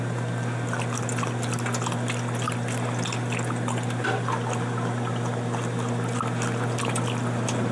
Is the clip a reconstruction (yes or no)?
no